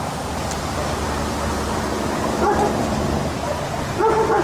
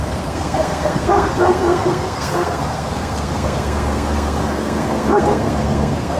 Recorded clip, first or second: first